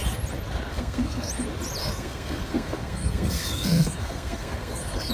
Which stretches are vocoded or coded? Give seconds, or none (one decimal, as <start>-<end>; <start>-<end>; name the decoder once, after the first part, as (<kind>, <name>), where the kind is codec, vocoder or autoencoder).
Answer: 0.7-1.3 (codec, SNAC); 1.8-5.1

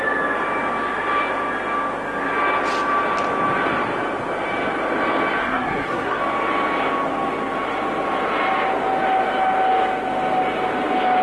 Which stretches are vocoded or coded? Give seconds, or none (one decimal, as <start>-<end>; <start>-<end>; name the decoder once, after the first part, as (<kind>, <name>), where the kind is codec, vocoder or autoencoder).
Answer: 5.4-6.2 (codec, SNAC)

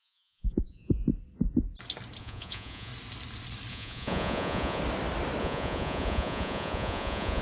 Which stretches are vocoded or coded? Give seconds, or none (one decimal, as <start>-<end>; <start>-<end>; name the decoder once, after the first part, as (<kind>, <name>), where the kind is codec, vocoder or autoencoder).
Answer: 0.0-1.0 (vocoder, Vocos); 2.2-2.9; 3.7-4.8; 5.4-7.4

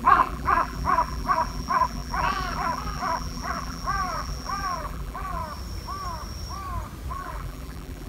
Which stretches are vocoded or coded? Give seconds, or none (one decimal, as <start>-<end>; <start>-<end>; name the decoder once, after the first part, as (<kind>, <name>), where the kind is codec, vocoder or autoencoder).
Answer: 0.0-5.4 (vocoder, BigVGAN v2); 7.1-8.1

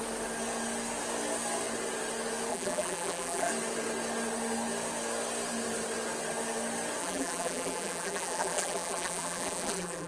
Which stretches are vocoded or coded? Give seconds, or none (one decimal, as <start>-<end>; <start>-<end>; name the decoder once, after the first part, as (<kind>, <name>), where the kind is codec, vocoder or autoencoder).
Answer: 2.5-3.5 (vocoder, BigVGAN v2); 7.0-10.1

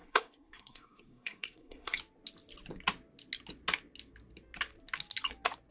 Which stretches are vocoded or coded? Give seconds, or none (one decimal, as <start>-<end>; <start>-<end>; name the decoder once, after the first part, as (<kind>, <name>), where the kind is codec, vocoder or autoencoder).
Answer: 0.0-2.0 (codec, SNAC)

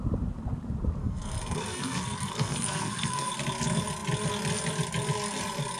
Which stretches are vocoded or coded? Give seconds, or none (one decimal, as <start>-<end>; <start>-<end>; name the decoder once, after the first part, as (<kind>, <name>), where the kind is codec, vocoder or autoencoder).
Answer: 1.0-3.3 (codec, SNAC)

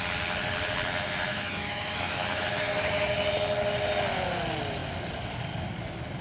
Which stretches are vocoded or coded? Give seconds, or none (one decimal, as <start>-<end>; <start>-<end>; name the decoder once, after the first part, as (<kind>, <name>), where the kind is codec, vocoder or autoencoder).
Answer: 1.3-3.3 (autoencoder, DAC-VAE)